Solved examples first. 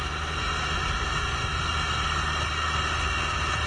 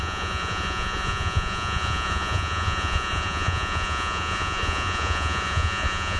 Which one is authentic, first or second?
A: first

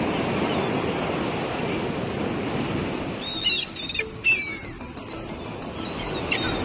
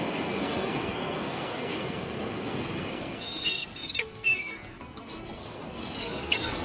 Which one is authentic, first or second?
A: first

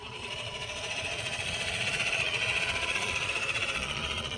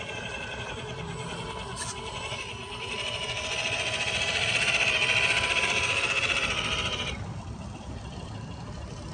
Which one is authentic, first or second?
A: second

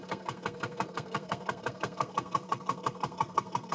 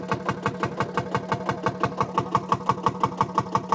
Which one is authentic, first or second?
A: second